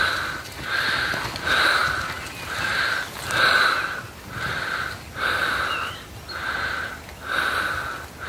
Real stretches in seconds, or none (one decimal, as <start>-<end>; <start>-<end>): 0.0-8.3

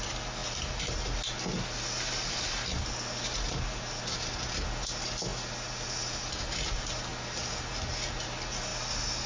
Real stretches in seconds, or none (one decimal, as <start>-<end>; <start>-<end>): 0.0-9.3

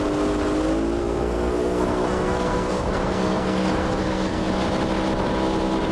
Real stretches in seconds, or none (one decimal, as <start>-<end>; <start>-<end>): 0.0-1.0; 4.5-5.9

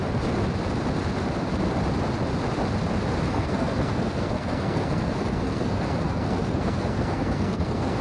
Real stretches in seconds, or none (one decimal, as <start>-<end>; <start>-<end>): 0.0-3.3